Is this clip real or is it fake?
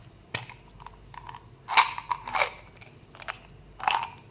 real